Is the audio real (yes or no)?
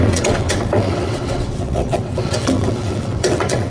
no